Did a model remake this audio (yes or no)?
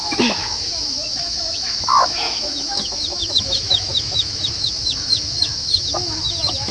yes